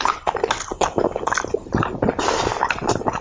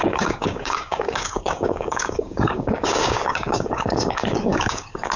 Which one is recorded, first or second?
first